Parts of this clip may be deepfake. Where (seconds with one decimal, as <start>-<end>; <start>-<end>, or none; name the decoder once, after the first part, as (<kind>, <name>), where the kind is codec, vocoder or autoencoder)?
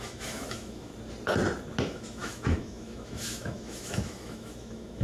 0.0-0.9 (autoencoder, DAC-VAE); 1.8-5.0